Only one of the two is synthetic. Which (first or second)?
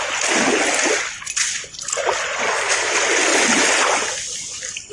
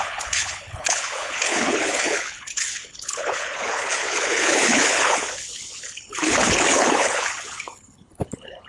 second